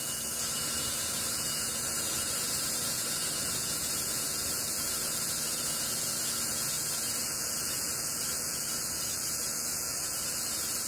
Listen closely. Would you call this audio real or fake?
fake